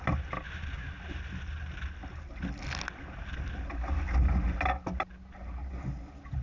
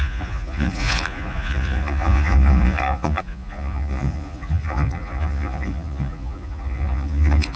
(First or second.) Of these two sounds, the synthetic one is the second